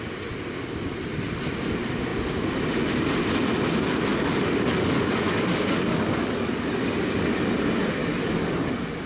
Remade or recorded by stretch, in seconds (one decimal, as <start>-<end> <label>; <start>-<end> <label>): 0.0-4.1 recorded; 4.1-7.4 remade; 7.4-8.0 recorded; 8.0-8.7 remade; 8.7-9.1 recorded